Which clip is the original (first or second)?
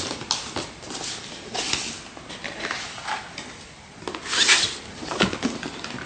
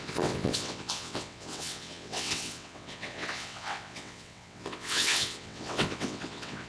first